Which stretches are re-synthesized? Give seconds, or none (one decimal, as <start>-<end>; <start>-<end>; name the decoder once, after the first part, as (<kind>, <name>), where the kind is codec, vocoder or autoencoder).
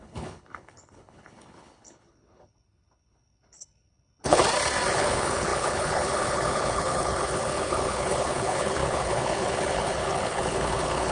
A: 0.0-4.4 (codec, HILCodec); 4.9-11.1